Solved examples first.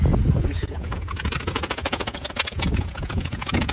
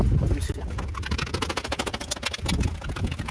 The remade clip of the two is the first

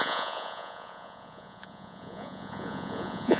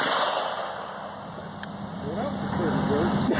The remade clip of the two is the first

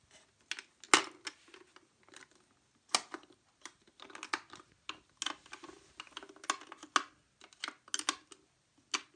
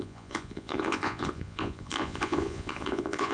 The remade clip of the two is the second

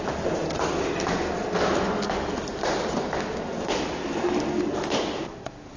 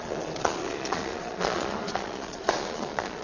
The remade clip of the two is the second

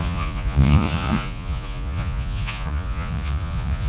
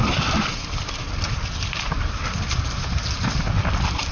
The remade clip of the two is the first